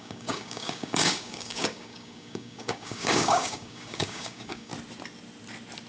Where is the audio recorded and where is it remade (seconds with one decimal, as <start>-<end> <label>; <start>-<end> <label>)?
0.0-4.7 remade; 4.7-5.9 recorded